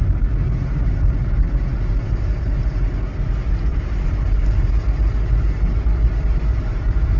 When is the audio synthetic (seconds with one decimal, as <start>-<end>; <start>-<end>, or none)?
3.7-4.7